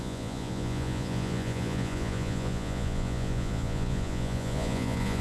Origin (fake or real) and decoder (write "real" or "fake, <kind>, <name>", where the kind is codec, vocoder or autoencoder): fake, vocoder, Vocos